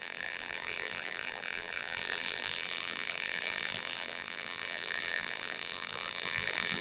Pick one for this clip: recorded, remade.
remade